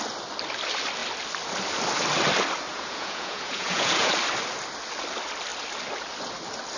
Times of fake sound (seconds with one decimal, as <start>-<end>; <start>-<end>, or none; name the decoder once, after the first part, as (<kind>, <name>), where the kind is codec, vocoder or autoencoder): 2.7-4.1 (vocoder, Vocos)